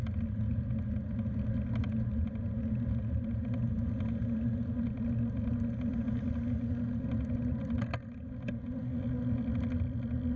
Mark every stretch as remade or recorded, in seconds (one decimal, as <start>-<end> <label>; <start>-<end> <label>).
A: 0.0-10.4 recorded